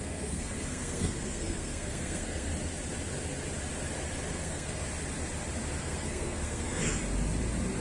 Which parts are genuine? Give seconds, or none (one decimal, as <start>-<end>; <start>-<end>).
2.5-4.3; 4.8-5.8; 7.0-7.8